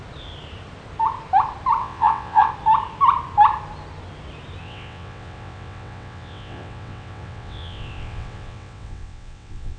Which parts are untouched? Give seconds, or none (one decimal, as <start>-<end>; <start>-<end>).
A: 0.0-1.8; 2.5-4.6